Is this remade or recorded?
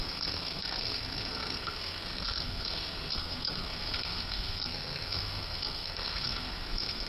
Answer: remade